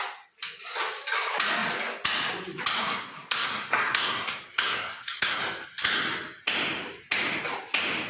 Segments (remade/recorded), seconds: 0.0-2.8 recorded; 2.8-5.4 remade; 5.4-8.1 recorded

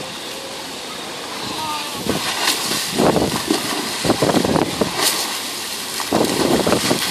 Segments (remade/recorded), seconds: 0.0-7.1 recorded

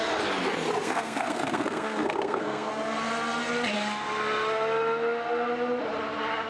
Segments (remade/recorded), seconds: 0.0-0.8 recorded; 0.8-2.7 remade; 2.7-6.5 recorded

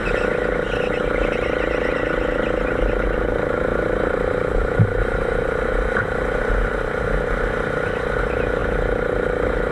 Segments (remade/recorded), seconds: 0.0-3.7 recorded; 3.7-6.4 remade; 6.4-9.7 recorded

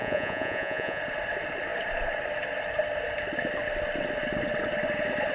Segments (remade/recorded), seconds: 0.0-1.0 remade; 1.0-5.3 recorded

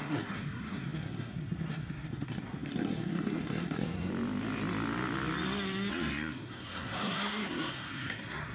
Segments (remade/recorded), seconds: 0.0-4.1 remade; 4.1-5.9 recorded; 5.9-8.5 remade

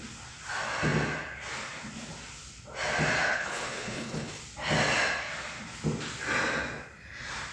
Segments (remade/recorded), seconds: 0.0-3.3 recorded; 3.3-4.4 remade; 4.4-7.5 recorded

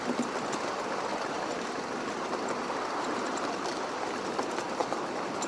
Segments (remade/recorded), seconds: 0.0-1.1 recorded; 1.1-4.3 remade; 4.3-4.8 recorded; 4.8-5.5 remade